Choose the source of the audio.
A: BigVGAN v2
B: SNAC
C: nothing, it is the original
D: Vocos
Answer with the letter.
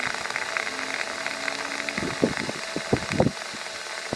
C